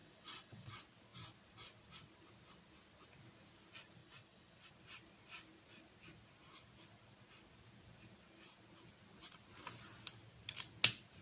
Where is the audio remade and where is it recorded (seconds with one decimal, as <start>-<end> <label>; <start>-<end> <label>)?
0.0-0.7 remade; 0.7-4.0 recorded; 4.0-4.7 remade; 4.7-11.2 recorded